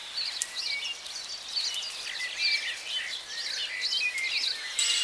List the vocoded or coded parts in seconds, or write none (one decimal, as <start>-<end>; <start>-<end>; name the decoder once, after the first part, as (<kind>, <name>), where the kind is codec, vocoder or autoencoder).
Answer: none